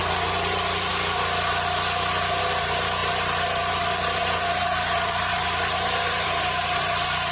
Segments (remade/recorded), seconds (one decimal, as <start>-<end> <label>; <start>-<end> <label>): 0.0-0.9 remade; 0.9-2.4 recorded; 2.4-7.3 remade